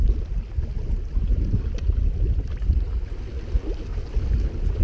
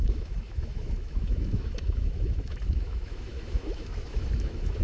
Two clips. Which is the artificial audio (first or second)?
second